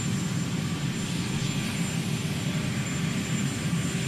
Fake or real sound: real